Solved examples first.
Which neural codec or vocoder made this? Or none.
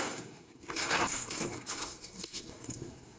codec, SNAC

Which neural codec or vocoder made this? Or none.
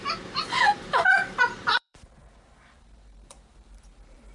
vocoder, BigVGAN v2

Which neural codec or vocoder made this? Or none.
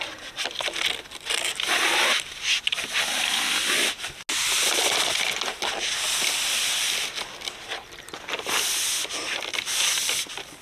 none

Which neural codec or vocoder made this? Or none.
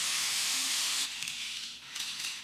autoencoder, DAC-VAE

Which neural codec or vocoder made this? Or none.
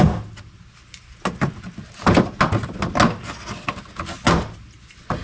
none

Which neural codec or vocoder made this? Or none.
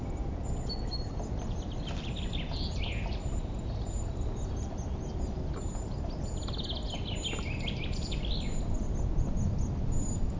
none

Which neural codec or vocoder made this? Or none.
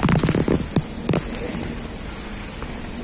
none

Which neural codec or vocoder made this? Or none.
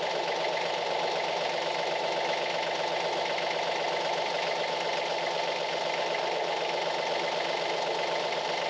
none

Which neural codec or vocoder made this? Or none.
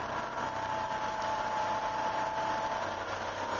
none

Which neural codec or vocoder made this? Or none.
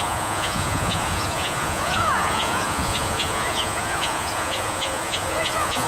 vocoder, Vocos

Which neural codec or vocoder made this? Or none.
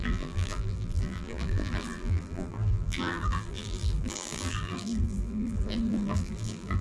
vocoder, BigVGAN v2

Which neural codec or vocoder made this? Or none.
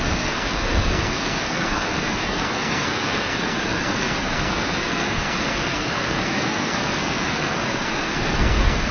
codec, SNAC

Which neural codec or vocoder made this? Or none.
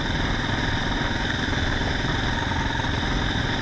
none